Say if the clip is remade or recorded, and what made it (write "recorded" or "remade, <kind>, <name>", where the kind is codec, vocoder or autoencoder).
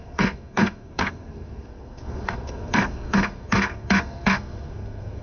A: remade, codec, SNAC